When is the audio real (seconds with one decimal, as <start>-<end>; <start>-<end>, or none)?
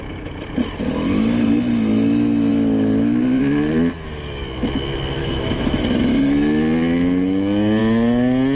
0.0-5.2; 5.8-8.6